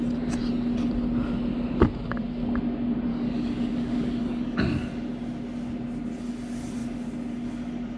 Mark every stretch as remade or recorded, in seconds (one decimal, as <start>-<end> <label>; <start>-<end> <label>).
0.0-3.1 recorded; 3.1-4.6 remade; 4.6-8.0 recorded